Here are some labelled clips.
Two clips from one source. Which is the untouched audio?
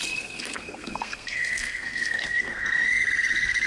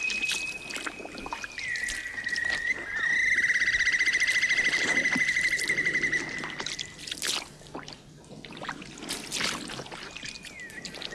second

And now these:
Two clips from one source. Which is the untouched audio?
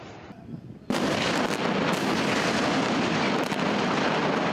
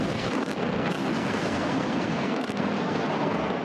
first